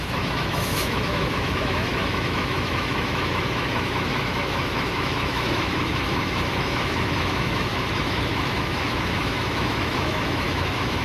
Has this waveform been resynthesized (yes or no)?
yes